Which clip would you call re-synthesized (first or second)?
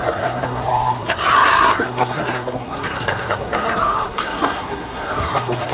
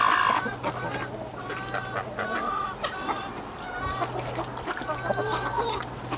first